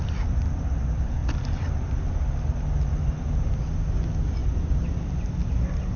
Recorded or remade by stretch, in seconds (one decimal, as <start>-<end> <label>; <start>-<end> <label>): 0.0-6.0 recorded